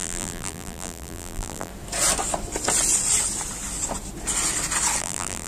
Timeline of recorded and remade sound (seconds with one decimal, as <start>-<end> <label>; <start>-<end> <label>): 0.0-1.7 remade; 1.7-5.0 recorded; 5.0-5.5 remade